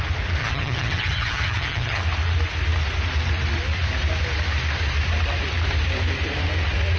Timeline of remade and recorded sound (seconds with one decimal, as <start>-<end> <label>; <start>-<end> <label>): 0.0-0.4 recorded; 0.4-2.0 remade; 2.0-7.0 recorded